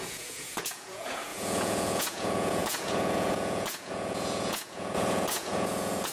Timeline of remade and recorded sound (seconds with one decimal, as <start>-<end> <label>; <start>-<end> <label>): 0.0-6.1 remade